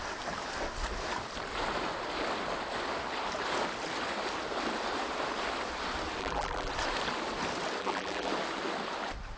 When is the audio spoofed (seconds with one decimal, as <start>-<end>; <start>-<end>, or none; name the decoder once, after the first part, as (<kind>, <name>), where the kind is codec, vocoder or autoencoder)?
6.2-6.7 (vocoder, BigVGAN v2); 7.8-8.3